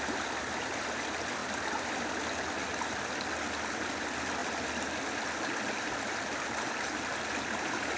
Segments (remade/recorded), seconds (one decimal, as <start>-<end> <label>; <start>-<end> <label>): 0.0-1.4 recorded; 1.4-2.2 remade; 2.2-4.4 recorded; 4.4-7.1 remade; 7.1-8.0 recorded